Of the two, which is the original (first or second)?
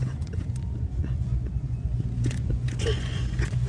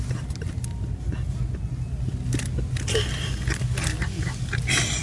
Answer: second